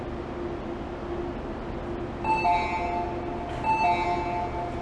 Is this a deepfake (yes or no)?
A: no